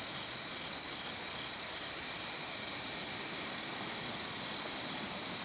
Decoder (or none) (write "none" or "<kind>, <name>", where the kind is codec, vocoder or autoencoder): none